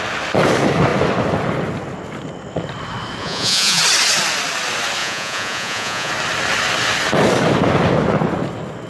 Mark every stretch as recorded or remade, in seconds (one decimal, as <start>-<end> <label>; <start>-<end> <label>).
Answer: 0.0-3.2 recorded; 3.2-3.8 remade; 3.8-5.0 recorded; 5.0-6.1 remade; 6.1-8.9 recorded

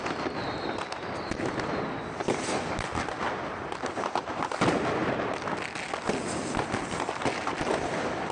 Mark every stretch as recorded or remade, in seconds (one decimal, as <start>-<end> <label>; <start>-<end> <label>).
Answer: 0.0-8.3 recorded

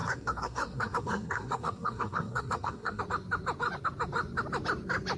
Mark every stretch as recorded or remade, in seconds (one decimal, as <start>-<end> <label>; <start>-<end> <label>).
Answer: 0.0-3.0 remade; 3.0-5.2 recorded

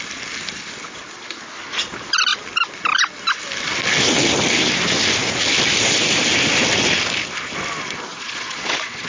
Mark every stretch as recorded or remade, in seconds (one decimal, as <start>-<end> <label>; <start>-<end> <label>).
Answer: 0.0-8.1 recorded; 8.1-9.1 remade

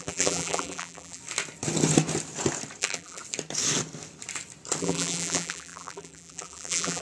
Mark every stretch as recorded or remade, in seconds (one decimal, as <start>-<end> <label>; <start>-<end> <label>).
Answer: 0.0-1.2 remade; 1.2-2.8 recorded; 2.8-3.2 remade; 3.2-4.8 recorded; 4.8-7.0 remade